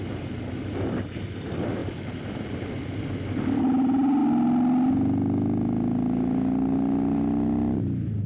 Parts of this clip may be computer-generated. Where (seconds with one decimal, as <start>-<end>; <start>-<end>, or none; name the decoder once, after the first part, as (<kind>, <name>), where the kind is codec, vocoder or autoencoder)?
1.8-3.6 (vocoder, BigVGAN v2)